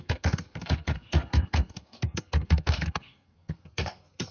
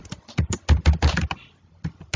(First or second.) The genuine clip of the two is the second